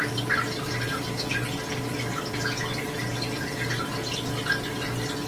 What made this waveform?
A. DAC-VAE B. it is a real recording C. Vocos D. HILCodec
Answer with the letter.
B